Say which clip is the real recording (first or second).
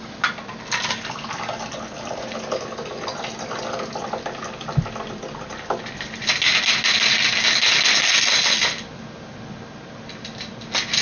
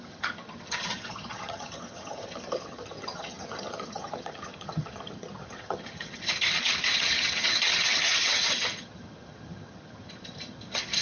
first